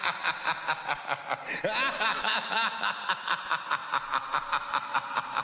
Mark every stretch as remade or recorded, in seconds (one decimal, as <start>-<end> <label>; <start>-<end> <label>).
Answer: 0.0-2.1 recorded; 2.1-2.9 remade; 2.9-5.4 recorded